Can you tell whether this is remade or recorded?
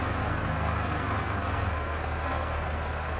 remade